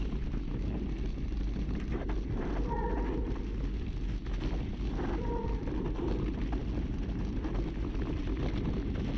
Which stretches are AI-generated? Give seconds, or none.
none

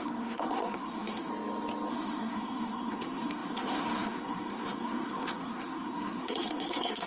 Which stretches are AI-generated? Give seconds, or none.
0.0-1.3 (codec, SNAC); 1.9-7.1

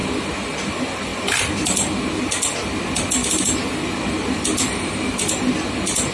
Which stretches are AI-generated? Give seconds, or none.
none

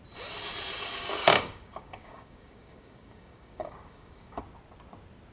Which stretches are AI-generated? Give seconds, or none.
1.2-4.4 (codec, DAC)

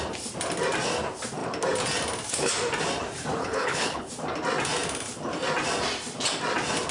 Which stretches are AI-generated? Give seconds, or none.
3.4-4.1 (codec, HILCodec)

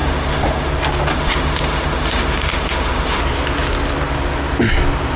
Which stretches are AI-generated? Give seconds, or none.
0.0-0.7 (autoencoder, DAC-VAE); 1.1-3.2